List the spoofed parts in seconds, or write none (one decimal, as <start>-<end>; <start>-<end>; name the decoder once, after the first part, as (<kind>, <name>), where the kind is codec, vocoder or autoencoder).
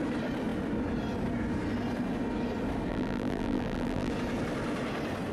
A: 2.9-4.1 (vocoder, BigVGAN v2)